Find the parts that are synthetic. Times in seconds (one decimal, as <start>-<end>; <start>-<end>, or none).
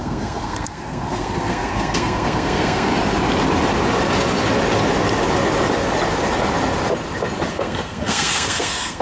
0.0-2.9; 7.5-9.0